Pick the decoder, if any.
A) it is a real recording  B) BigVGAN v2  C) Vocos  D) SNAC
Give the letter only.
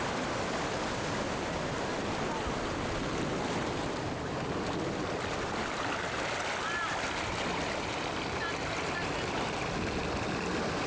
A